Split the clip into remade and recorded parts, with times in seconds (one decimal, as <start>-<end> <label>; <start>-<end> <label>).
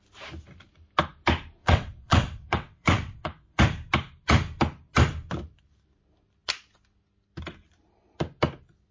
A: 0.0-1.6 recorded; 1.6-3.6 remade; 3.6-8.9 recorded